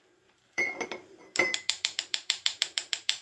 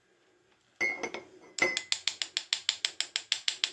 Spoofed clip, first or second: first